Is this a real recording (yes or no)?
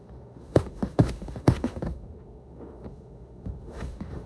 no